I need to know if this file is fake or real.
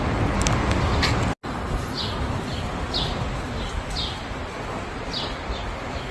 real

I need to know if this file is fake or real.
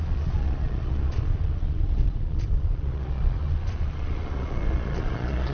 fake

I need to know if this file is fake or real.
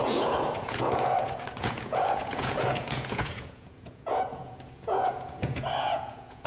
fake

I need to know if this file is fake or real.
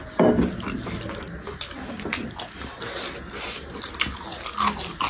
real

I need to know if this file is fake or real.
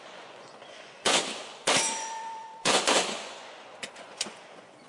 fake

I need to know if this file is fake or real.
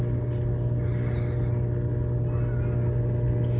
real